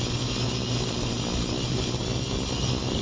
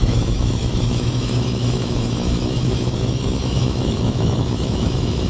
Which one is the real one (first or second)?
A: first